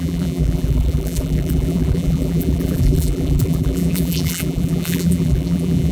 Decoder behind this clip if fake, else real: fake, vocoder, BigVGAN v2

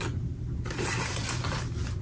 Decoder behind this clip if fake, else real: real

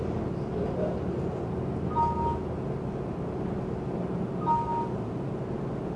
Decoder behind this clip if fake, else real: real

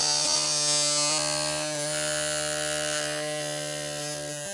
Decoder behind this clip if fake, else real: real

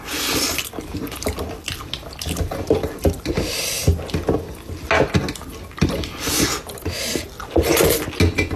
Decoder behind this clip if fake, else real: real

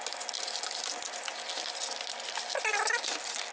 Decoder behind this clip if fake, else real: real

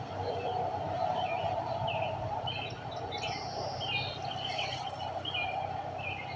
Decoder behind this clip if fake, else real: real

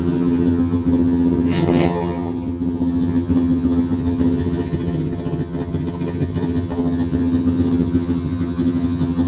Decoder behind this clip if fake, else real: fake, vocoder, HiFi-GAN